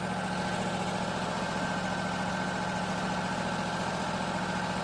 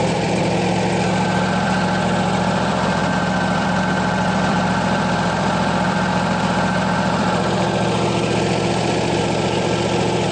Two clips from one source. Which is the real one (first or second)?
first